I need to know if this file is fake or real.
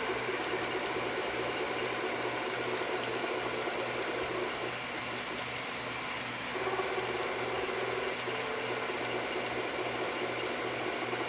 real